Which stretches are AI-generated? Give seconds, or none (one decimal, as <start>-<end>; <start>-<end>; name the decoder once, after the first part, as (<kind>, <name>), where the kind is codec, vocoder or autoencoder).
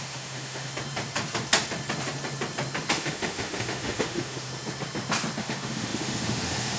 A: 0.0-0.7 (autoencoder, DAC-VAE); 2.9-4.5; 5.4-6.8